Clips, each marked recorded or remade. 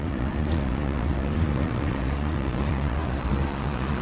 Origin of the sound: remade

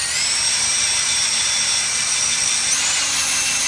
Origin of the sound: recorded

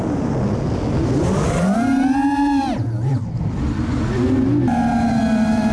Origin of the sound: recorded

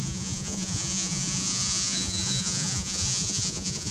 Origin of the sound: remade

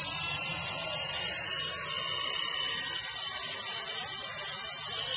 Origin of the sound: recorded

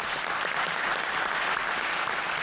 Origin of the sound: recorded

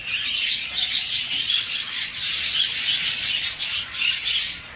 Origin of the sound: remade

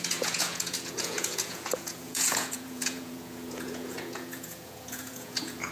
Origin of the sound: remade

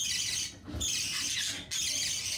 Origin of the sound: recorded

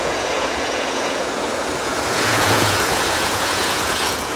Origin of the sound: remade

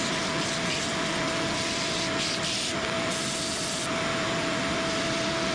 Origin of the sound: recorded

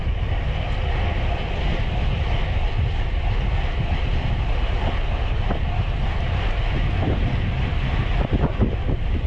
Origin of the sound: recorded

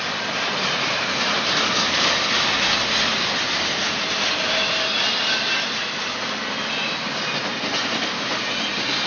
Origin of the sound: recorded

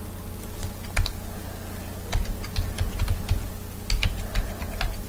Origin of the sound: recorded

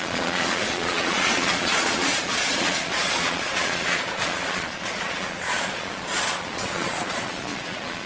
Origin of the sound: remade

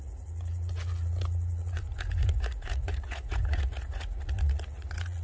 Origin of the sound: remade